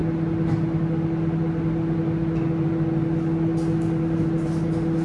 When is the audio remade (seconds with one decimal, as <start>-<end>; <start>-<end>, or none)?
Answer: none